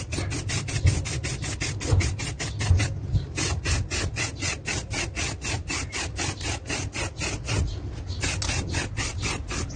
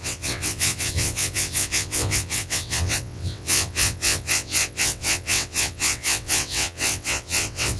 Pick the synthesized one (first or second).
second